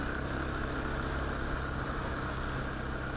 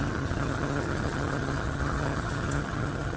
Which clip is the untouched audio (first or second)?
first